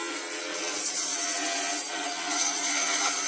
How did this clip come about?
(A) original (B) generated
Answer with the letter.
B